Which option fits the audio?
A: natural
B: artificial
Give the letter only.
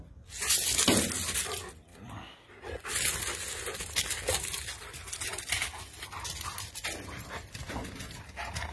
A